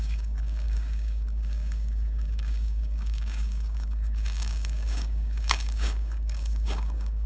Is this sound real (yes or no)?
no